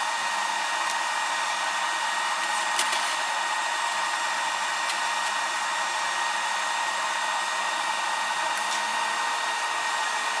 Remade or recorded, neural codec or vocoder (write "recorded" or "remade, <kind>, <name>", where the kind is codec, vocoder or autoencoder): recorded